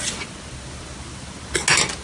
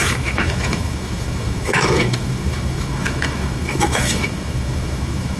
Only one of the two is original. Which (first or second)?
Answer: first